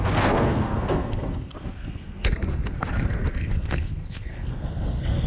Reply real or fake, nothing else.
fake